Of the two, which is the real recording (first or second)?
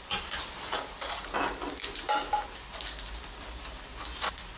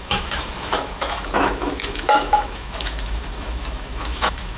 first